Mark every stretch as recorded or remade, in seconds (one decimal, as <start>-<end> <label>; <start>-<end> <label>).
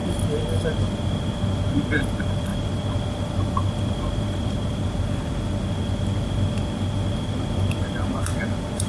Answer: 0.0-8.9 recorded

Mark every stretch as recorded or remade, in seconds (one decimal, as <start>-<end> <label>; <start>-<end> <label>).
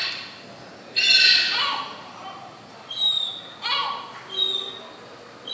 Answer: 0.0-3.3 remade; 3.3-5.5 recorded